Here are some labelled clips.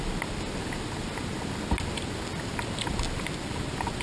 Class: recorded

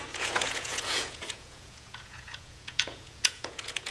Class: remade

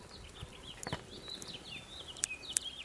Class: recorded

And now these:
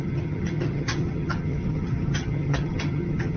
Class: remade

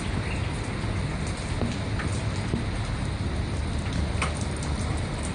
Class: recorded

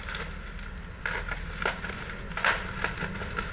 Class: recorded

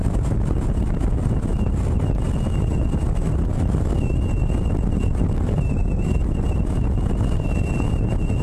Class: recorded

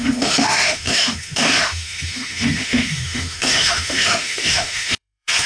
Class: remade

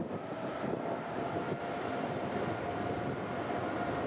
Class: recorded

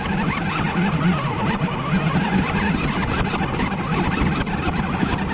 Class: recorded